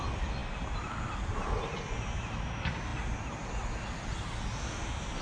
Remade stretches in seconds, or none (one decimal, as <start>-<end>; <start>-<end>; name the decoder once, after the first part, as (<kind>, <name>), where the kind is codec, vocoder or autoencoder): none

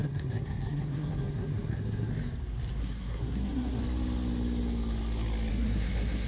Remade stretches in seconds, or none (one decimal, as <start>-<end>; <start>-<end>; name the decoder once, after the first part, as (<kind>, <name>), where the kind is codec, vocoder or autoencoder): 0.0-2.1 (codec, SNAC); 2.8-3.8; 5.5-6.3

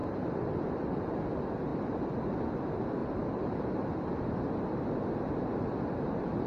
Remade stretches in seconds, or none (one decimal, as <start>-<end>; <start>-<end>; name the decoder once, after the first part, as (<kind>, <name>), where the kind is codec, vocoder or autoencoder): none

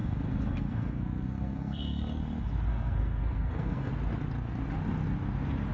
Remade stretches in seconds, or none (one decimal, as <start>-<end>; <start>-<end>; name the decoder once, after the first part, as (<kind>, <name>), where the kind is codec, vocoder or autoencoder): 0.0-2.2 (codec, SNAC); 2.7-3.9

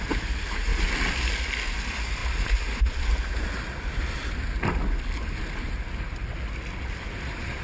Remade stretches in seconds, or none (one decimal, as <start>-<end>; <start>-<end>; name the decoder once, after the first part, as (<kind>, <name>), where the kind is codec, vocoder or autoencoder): none